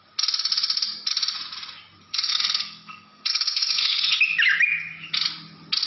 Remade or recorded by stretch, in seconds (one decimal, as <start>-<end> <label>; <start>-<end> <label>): 0.0-2.1 recorded; 2.1-4.0 remade; 4.0-5.9 recorded